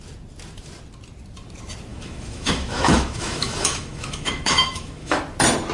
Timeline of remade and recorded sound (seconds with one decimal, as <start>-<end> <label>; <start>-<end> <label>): 0.0-1.9 recorded; 1.9-5.2 remade; 5.2-5.7 recorded